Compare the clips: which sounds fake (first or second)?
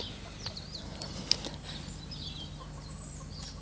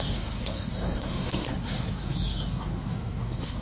second